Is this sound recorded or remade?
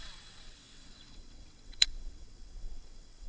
remade